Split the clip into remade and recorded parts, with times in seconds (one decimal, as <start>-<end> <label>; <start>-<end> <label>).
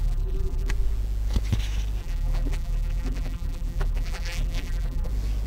0.0-0.7 remade; 0.7-2.0 recorded; 2.0-5.1 remade; 5.1-5.5 recorded